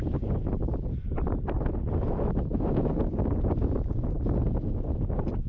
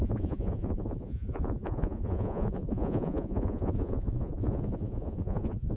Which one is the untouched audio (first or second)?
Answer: first